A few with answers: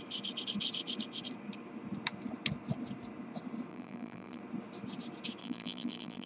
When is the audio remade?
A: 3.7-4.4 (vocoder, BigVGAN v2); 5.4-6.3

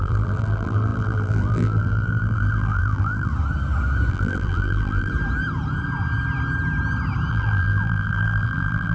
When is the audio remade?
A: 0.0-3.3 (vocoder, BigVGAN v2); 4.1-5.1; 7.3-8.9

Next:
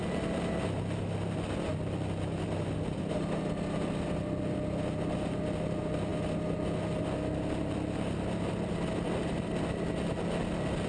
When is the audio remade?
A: none

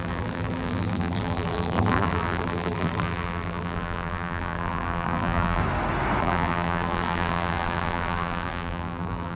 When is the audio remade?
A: 0.0-5.6 (vocoder, BigVGAN v2); 6.2-9.4

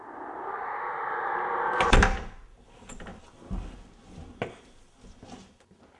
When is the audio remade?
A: none